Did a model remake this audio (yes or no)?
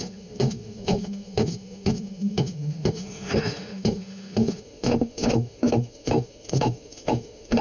yes